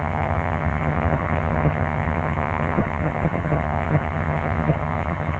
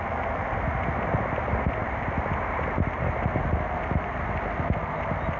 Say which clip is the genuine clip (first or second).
second